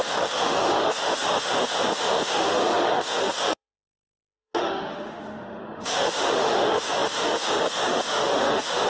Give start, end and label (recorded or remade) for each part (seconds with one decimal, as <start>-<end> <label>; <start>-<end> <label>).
0.0-8.9 remade